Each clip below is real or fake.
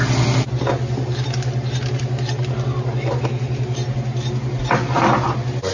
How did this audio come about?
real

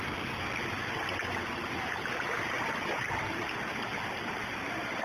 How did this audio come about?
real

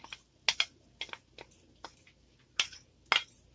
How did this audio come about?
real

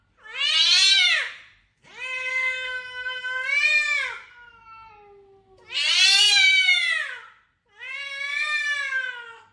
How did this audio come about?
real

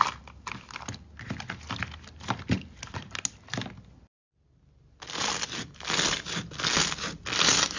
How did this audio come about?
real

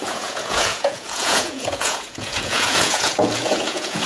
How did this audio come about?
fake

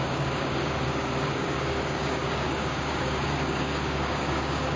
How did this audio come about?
fake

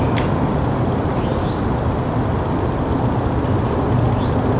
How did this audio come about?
real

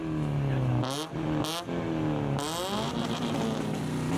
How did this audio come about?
real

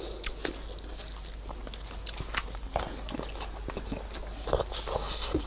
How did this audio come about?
real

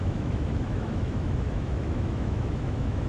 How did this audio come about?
fake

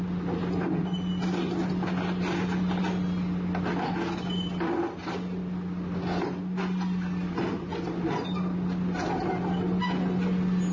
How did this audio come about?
real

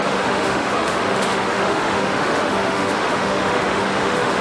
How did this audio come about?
fake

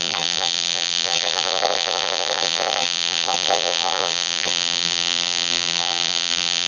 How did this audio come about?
fake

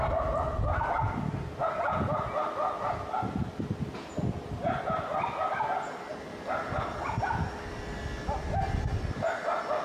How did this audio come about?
real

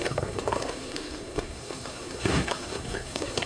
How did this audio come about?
fake